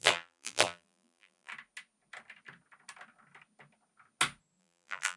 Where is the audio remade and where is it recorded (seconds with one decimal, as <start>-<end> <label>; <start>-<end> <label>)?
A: 0.0-1.5 remade; 1.5-4.6 recorded; 4.6-5.2 remade